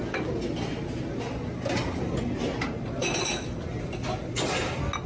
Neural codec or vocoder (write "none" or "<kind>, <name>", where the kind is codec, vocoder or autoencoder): none